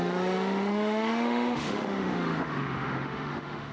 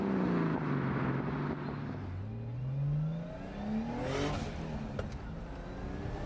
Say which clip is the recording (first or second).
second